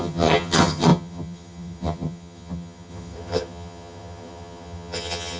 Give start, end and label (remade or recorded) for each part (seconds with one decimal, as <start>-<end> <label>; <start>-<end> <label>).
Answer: 0.0-5.4 remade

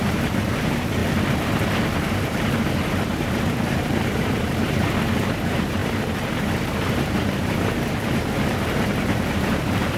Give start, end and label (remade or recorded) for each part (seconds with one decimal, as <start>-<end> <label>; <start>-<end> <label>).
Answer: 0.0-1.0 remade; 1.0-1.7 recorded; 1.7-10.0 remade

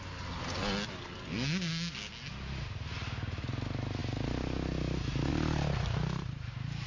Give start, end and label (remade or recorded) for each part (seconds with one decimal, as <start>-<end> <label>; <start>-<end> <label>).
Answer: 0.0-6.9 recorded

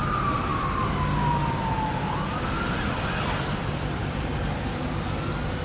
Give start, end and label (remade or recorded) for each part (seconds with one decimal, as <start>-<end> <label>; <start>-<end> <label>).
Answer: 0.0-5.6 recorded

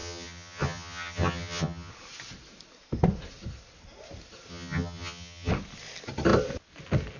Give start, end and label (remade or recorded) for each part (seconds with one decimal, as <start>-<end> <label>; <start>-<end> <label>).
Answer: 0.0-1.9 remade; 1.9-4.5 recorded; 4.5-5.5 remade; 5.5-7.2 recorded

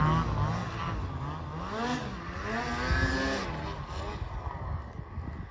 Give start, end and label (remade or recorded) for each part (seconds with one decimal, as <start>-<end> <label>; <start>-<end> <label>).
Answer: 0.0-5.5 recorded

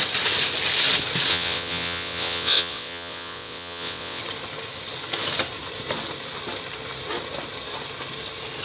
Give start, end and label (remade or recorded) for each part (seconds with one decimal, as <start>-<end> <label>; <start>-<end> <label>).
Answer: 0.0-1.3 recorded; 1.3-4.2 remade; 4.2-8.6 recorded

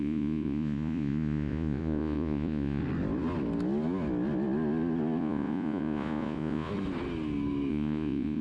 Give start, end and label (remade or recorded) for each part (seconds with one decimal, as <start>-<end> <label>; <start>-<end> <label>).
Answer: 0.0-2.8 remade; 2.8-5.2 recorded; 5.2-6.7 remade; 6.7-7.7 recorded; 7.7-8.4 remade